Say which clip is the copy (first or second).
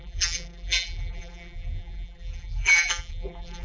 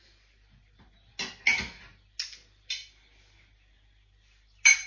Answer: first